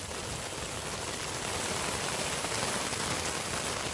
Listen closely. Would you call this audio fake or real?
real